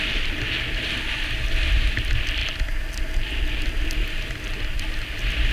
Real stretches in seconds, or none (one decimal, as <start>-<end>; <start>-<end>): 0.0-5.5